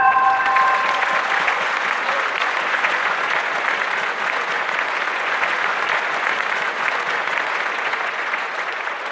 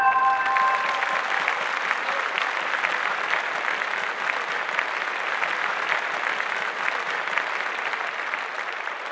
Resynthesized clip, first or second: first